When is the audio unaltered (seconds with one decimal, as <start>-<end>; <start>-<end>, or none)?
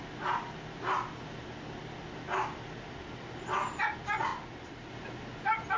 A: 0.0-5.8